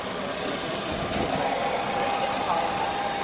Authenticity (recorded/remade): remade